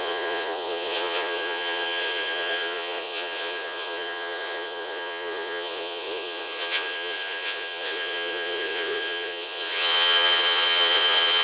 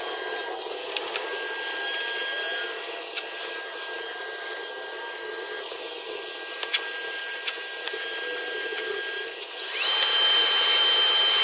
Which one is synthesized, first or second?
first